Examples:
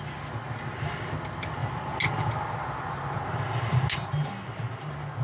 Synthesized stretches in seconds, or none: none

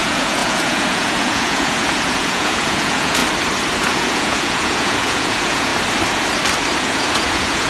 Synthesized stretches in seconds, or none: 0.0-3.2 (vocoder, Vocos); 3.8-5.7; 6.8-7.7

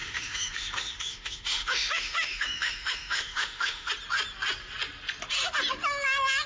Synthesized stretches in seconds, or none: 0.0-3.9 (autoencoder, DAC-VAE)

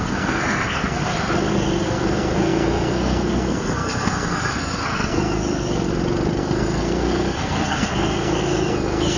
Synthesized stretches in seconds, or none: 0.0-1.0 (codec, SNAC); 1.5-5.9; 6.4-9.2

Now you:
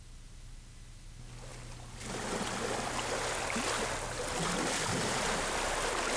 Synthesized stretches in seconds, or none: none

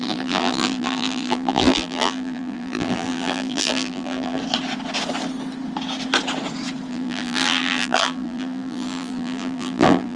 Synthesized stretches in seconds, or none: 0.0-4.4 (vocoder, BigVGAN v2); 6.9-10.2

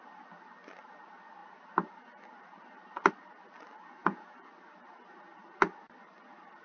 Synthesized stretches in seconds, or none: 4.0-4.5 (vocoder, Vocos)